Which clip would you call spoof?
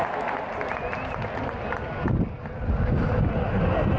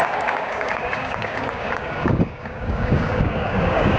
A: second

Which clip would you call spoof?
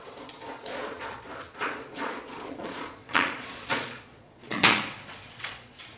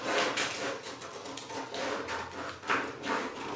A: first